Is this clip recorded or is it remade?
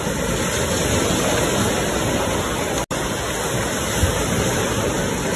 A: recorded